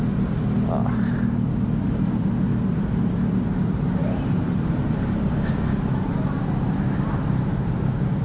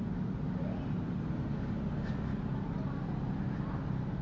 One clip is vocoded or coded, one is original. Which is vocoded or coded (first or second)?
first